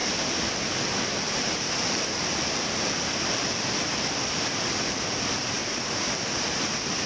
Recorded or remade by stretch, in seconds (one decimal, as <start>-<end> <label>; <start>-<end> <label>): 0.0-5.6 remade; 5.6-7.1 recorded